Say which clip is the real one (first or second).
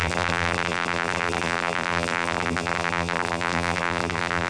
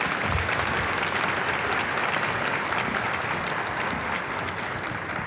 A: second